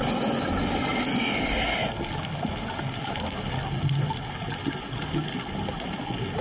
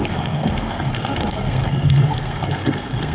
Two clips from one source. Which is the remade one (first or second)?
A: second